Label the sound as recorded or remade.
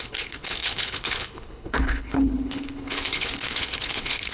remade